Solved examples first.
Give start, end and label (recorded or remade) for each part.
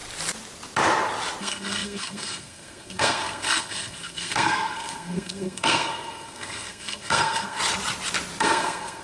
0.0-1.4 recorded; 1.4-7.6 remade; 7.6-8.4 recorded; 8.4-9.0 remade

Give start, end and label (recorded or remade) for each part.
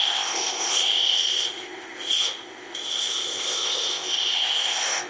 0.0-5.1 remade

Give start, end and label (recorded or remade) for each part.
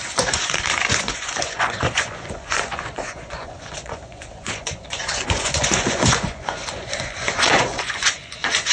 0.0-8.7 remade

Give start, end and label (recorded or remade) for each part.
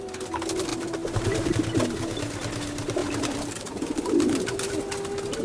0.0-0.7 recorded; 0.7-1.5 remade; 1.5-3.0 recorded; 3.0-4.8 remade; 4.8-5.4 recorded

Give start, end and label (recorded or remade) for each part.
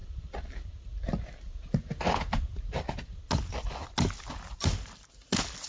0.0-5.7 recorded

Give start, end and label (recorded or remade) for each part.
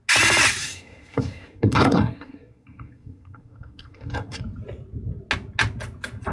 0.0-0.6 recorded; 0.6-4.4 remade; 4.4-6.3 recorded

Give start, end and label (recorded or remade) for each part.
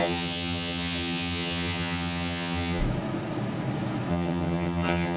0.0-2.8 remade; 2.8-4.1 recorded; 4.1-5.2 remade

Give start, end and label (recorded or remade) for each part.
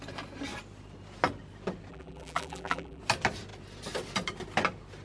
0.0-1.9 recorded; 1.9-3.0 remade; 3.0-5.0 recorded